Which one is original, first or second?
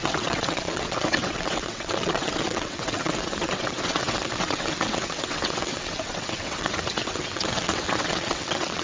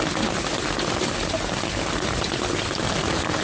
second